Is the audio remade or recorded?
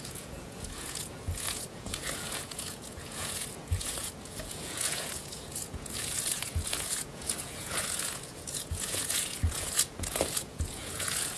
remade